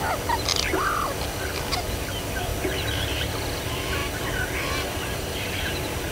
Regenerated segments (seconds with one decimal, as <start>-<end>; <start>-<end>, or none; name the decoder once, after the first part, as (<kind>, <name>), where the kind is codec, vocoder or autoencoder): 0.0-0.5 (vocoder, BigVGAN v2); 1.5-2.5; 3.0-4.0; 4.6-6.1